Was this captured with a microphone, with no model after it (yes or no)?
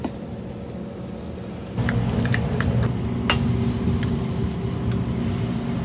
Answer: yes